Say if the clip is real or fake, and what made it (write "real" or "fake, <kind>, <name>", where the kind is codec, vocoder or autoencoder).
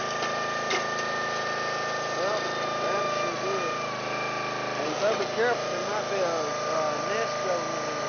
real